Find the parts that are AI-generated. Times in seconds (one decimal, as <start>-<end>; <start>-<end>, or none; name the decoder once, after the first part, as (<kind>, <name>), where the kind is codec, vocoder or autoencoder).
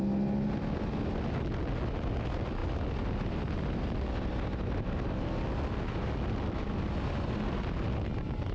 none